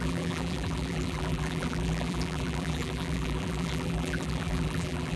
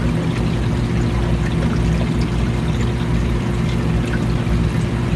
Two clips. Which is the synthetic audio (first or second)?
first